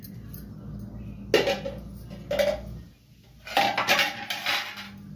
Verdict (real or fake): real